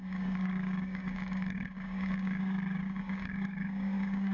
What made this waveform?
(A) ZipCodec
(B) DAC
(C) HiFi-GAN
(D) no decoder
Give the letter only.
B